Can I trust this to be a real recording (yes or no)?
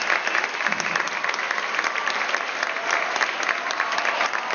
yes